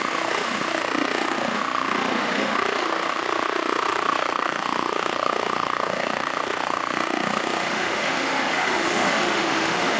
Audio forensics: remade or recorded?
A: remade